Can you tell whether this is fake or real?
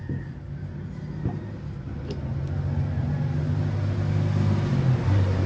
real